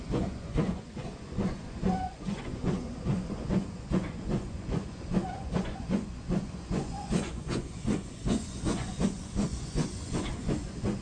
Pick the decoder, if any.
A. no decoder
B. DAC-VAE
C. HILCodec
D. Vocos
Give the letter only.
D